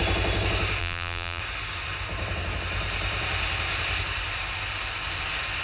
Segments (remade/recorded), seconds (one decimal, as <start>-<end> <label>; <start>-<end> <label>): 0.0-0.8 recorded; 0.8-1.4 remade; 1.4-5.6 recorded